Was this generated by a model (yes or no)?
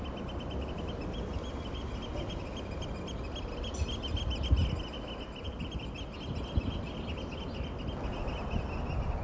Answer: no